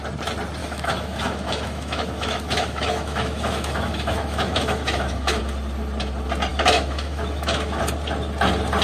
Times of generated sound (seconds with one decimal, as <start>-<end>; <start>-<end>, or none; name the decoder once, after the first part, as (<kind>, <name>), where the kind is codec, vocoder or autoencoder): 0.6-5.4 (autoencoder, DAC-VAE); 6.5-7.8